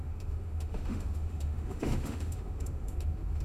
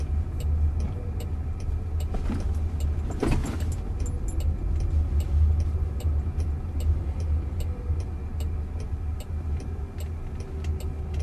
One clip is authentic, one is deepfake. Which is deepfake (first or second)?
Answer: first